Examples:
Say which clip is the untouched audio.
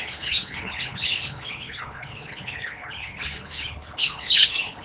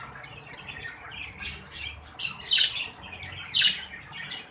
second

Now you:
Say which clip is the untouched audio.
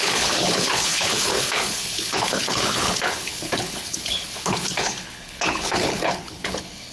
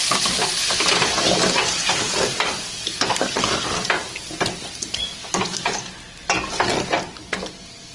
second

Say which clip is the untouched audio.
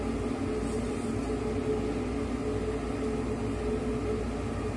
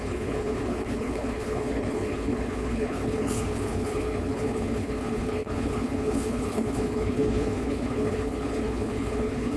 first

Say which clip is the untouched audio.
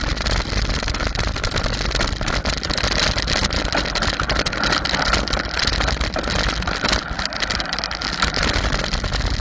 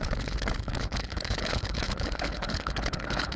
first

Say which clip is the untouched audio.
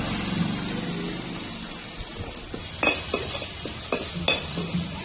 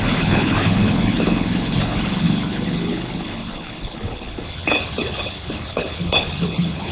first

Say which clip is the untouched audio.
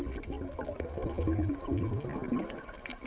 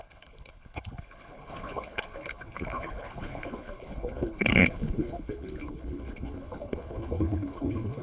first